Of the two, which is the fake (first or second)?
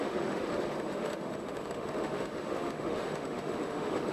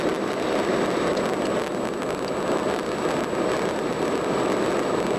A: first